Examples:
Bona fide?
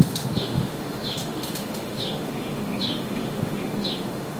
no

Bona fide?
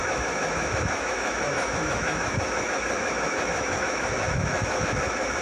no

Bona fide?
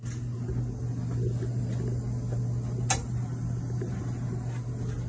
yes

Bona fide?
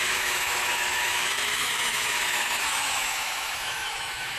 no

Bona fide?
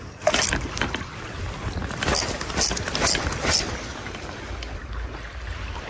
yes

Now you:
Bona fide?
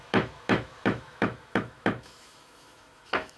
no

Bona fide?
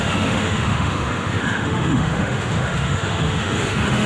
no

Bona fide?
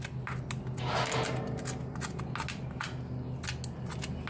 yes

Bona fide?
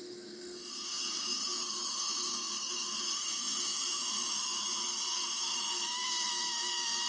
no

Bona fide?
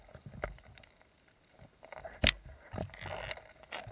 yes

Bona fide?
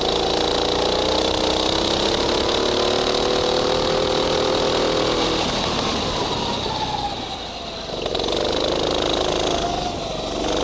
yes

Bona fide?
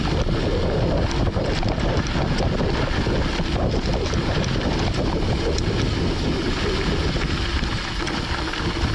yes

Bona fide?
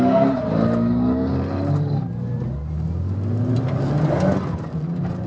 yes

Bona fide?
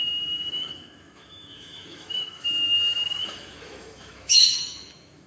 no